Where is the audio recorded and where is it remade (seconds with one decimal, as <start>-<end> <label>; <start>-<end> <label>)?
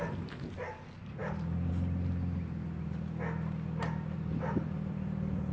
0.0-5.5 recorded